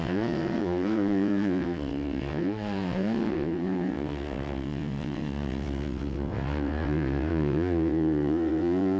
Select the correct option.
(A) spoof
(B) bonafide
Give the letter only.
A